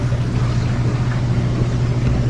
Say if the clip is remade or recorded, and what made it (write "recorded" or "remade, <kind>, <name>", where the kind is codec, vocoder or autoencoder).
recorded